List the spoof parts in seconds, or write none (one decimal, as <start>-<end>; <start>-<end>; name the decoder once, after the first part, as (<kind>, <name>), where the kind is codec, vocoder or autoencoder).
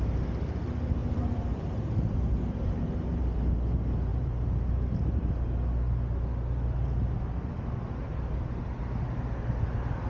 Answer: 1.0-3.2 (vocoder, BigVGAN v2); 4.1-4.9